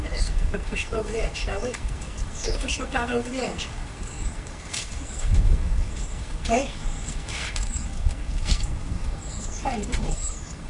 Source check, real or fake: fake